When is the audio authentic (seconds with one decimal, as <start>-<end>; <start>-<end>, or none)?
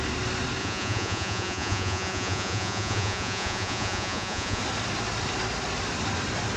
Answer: 0.0-0.6; 4.6-6.6